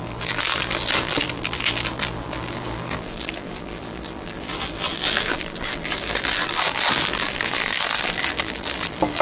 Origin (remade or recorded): remade